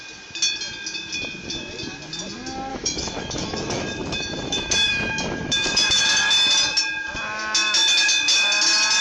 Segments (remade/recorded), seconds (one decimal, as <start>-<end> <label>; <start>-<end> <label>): 0.0-2.7 recorded; 2.7-6.0 remade; 6.0-9.0 recorded

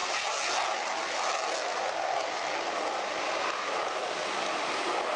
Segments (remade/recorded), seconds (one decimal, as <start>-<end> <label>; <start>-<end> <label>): 0.0-5.2 recorded

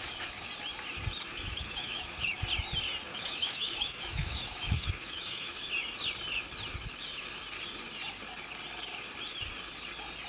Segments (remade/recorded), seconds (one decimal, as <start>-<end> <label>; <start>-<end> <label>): 0.0-1.3 recorded; 1.3-2.4 remade; 2.4-3.1 recorded; 3.1-5.7 remade; 5.7-10.3 recorded

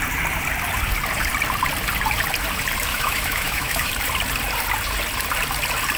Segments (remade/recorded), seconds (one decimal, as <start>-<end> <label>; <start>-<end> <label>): 0.0-2.9 recorded; 2.9-3.9 remade; 3.9-6.0 recorded